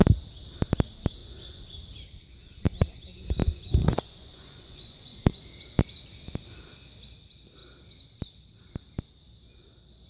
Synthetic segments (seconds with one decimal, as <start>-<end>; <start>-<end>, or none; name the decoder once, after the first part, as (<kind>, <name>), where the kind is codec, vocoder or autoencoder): 1.2-1.8 (vocoder, Vocos); 3.4-5.4